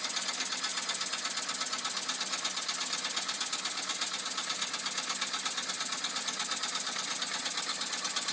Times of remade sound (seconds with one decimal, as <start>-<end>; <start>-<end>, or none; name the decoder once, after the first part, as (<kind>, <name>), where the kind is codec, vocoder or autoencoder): none